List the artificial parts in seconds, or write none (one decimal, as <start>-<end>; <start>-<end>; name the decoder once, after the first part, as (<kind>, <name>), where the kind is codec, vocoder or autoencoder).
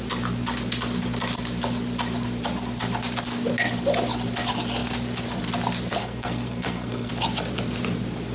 6.0-7.1 (codec, SNAC)